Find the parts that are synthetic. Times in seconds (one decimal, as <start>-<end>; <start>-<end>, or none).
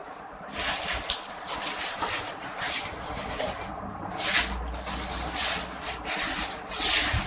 0.0-7.3